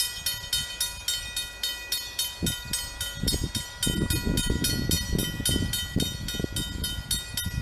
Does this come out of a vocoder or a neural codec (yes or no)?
no